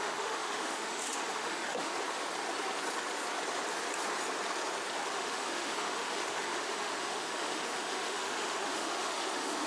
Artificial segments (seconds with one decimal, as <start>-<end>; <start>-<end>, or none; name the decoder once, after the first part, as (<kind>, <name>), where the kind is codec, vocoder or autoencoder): 0.0-1.9 (autoencoder, DAC-VAE); 5.1-9.7